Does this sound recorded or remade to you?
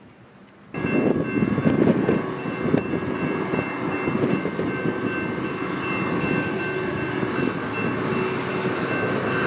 recorded